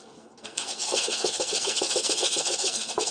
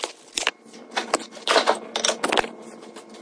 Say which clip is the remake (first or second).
first